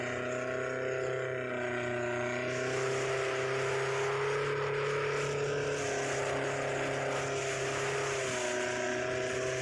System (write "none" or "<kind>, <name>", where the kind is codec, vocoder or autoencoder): none